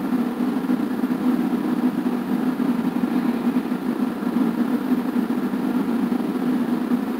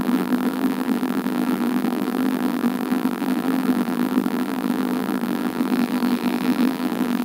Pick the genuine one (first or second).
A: first